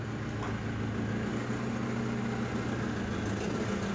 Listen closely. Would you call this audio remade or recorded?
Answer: recorded